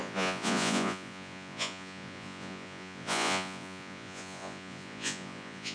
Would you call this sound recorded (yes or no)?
no